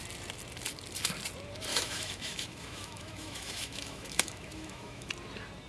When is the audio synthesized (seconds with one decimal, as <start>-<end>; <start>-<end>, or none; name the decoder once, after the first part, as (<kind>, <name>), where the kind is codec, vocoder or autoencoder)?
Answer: 1.7-5.1 (autoencoder, DAC-VAE)